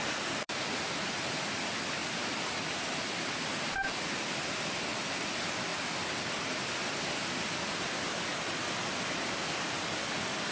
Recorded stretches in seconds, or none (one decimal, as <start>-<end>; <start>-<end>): 5.7-6.9; 8.3-9.3